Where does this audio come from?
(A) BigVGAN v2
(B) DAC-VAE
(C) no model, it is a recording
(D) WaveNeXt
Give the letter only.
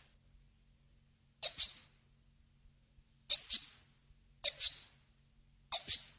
C